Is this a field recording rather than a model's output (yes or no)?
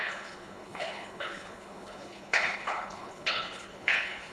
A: no